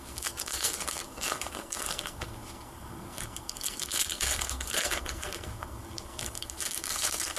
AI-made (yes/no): yes